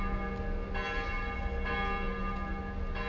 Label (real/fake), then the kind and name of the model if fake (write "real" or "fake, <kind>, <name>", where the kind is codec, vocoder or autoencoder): real